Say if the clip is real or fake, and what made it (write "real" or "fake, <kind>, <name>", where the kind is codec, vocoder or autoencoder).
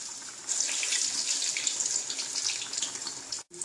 fake, vocoder, BigVGAN v2